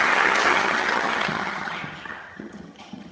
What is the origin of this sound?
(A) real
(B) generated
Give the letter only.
B